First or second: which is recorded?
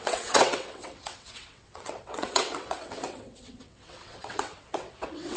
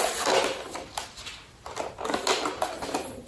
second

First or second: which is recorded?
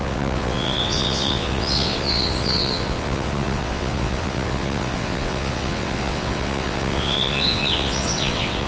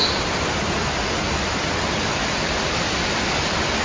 second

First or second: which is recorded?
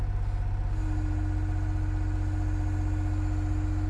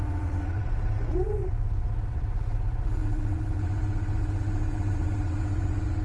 first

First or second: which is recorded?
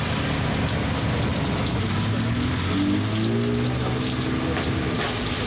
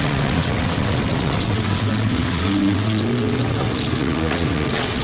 first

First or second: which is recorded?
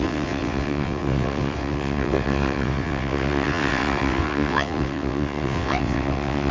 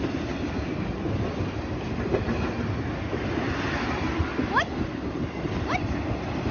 second